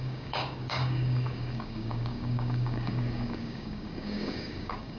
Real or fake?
fake